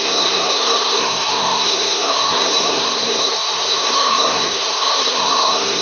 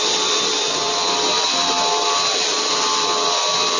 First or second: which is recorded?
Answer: second